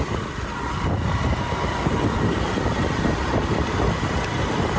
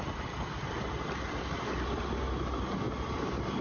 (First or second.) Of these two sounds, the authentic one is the second